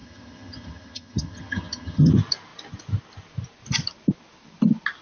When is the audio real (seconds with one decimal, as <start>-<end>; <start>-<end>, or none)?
2.1-5.0